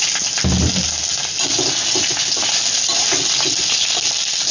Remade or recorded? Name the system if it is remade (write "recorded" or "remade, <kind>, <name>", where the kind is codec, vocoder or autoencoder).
recorded